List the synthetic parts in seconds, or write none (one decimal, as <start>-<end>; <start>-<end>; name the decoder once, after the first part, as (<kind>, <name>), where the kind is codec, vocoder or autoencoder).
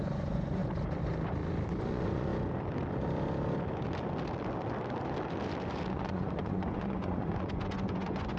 0.0-0.6 (vocoder, Vocos); 1.9-2.3; 5.9-8.4